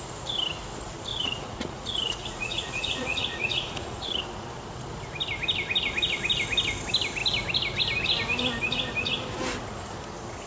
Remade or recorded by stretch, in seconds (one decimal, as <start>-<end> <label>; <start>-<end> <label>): 0.0-1.1 recorded; 1.1-4.2 remade; 4.2-10.5 recorded